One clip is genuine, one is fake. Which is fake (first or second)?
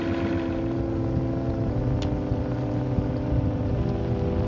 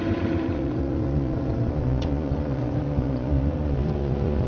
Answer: second